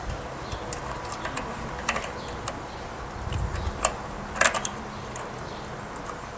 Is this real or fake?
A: real